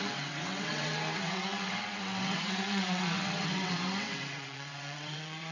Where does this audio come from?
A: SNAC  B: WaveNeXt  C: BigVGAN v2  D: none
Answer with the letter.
B